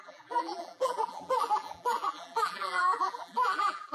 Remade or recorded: remade